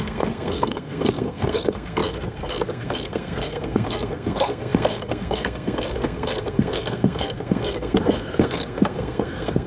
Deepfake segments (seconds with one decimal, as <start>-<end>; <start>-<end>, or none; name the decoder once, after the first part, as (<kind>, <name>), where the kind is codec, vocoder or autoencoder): 0.0-9.7 (codec, SNAC)